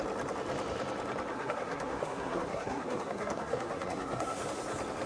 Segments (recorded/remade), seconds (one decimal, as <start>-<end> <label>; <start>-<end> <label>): 0.0-1.3 recorded; 1.3-4.4 remade; 4.4-5.1 recorded